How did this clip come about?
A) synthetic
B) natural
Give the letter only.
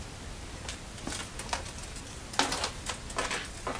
B